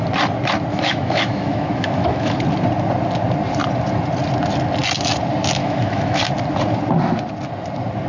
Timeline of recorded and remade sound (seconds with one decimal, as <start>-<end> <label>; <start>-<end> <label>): 0.0-0.7 recorded; 0.7-2.4 remade; 2.4-5.6 recorded; 5.6-6.2 remade; 6.2-8.1 recorded

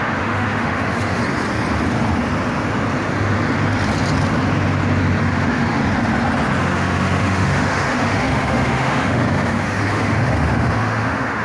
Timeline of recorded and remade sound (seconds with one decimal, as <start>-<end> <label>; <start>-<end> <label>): 0.0-1.2 remade; 1.2-5.2 recorded; 5.2-5.8 remade; 5.8-6.6 recorded; 6.6-11.4 remade

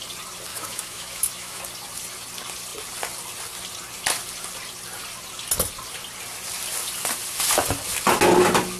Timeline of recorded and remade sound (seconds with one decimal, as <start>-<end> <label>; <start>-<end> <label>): 0.0-0.5 recorded; 0.5-1.6 remade; 1.6-8.8 recorded

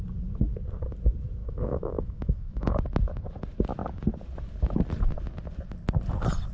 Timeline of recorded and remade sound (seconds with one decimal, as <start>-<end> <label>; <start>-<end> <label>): 0.0-1.4 recorded; 1.4-2.7 remade; 2.7-6.5 recorded